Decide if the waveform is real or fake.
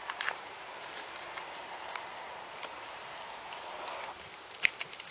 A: fake